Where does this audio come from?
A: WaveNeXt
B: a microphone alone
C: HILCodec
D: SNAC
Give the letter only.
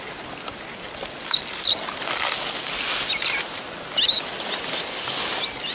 B